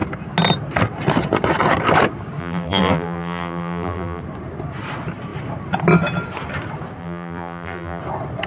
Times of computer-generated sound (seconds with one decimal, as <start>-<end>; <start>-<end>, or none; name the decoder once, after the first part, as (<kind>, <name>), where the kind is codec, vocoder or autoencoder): 2.4-4.2 (vocoder, BigVGAN v2); 7.0-8.0